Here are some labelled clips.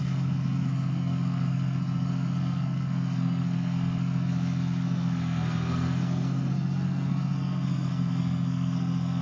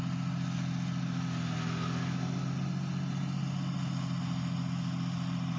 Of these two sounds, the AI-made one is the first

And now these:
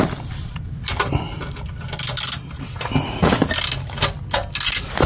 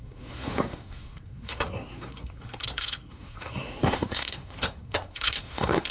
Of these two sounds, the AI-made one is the second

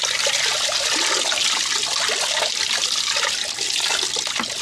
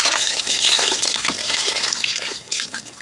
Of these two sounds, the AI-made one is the second